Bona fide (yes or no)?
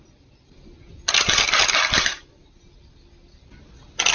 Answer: yes